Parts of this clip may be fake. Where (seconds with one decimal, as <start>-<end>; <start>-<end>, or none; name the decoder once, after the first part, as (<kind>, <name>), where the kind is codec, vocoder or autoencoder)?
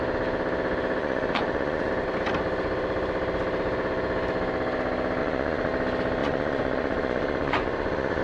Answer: 1.0-1.9 (vocoder, Vocos); 5.2-5.7; 6.2-8.2